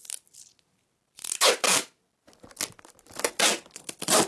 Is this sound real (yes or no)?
yes